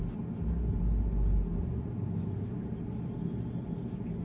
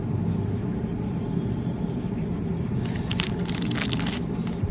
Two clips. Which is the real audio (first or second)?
first